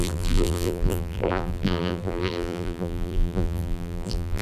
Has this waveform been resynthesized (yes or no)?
yes